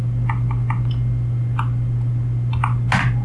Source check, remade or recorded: recorded